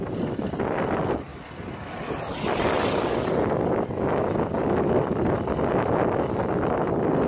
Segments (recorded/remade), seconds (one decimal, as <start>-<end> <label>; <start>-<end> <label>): 0.0-7.3 recorded